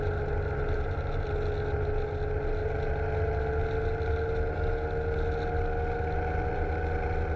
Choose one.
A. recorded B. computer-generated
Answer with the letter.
A